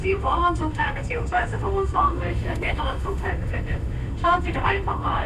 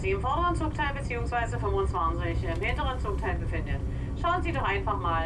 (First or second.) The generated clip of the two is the first